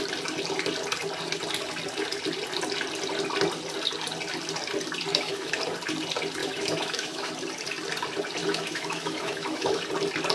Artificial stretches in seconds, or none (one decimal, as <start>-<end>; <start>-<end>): 5.1-5.6; 6.4-7.3; 8.4-9.8